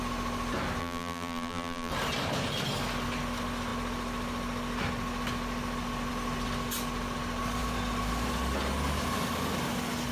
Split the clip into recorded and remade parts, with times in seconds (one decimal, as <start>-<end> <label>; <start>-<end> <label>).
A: 0.0-0.8 recorded; 0.8-1.9 remade; 1.9-10.1 recorded